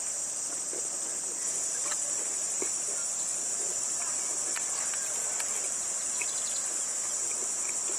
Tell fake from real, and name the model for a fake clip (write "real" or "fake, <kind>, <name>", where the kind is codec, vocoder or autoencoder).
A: real